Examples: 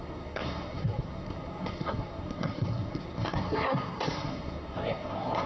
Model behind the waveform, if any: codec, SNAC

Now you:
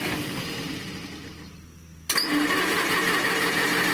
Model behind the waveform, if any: none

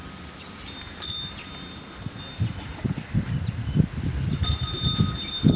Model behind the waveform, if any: none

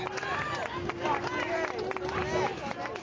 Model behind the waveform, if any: none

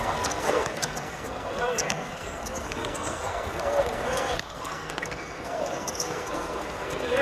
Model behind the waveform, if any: codec, SNAC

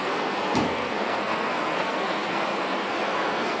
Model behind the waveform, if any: codec, SNAC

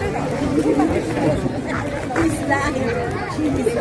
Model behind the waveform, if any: none